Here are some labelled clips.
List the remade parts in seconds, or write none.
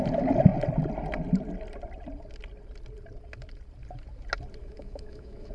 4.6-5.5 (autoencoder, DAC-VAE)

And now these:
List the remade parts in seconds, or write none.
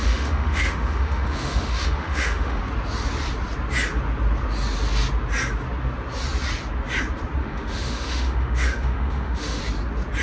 0.0-2.6 (autoencoder, DAC-VAE); 7.4-9.6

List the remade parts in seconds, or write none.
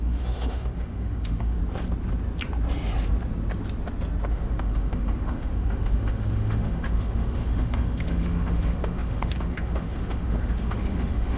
0.0-1.6 (autoencoder, DAC-VAE); 4.3-11.4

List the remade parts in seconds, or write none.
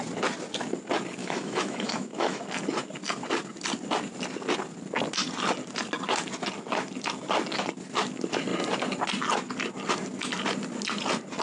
1.2-2.4 (autoencoder, DAC-VAE)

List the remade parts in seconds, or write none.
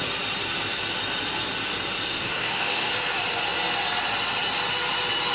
2.1-2.9 (autoencoder, DAC-VAE)